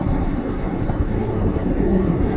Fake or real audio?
fake